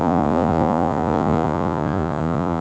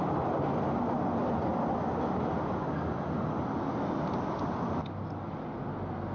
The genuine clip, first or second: second